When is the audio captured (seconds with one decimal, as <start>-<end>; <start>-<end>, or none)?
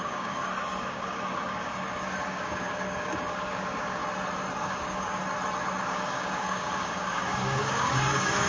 4.0-4.6; 5.2-5.8